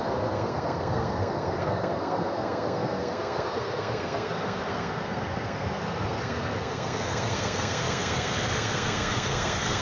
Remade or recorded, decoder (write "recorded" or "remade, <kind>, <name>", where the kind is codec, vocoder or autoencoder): remade, codec, SNAC